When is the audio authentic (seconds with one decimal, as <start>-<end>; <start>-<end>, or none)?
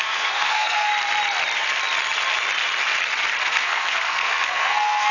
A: 0.9-3.4